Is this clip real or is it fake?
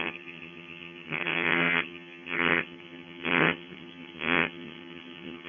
fake